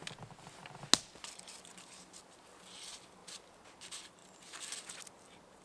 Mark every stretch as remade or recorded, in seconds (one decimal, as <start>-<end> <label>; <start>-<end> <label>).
0.0-5.6 recorded